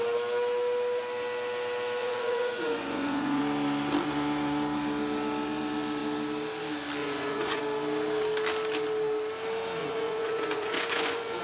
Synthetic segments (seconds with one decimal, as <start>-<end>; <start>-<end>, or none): 2.0-3.4; 7.0-7.6; 9.8-11.4